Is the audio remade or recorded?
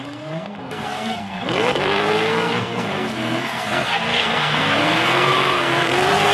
remade